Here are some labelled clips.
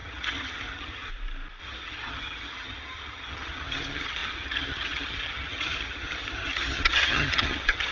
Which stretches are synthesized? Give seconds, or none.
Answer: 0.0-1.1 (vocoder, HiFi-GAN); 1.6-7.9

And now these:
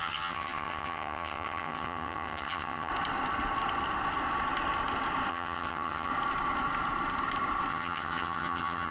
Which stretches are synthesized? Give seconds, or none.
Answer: 0.0-2.9 (vocoder, HiFi-GAN); 5.3-6.1; 7.7-8.9

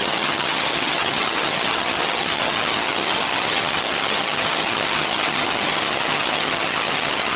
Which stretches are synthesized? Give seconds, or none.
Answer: 0.0-7.4 (vocoder, HiFi-GAN)

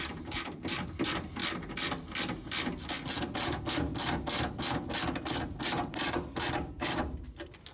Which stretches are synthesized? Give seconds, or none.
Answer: none